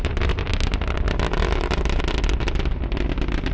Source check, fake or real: real